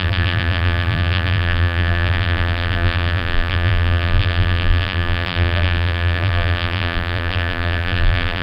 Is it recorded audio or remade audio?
remade